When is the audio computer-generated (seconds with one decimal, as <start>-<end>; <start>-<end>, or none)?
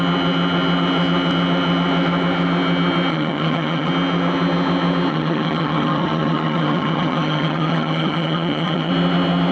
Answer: 3.1-3.9; 5.1-8.9